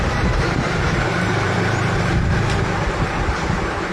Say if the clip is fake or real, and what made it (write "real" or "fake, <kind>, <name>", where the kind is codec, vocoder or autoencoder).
fake, vocoder, BigVGAN v2